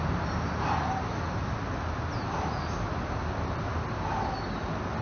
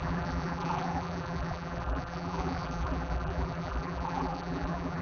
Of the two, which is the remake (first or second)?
second